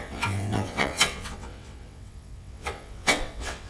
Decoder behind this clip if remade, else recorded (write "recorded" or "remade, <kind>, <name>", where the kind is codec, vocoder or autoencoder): remade, vocoder, WaveNeXt